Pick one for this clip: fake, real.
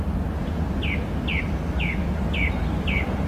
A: real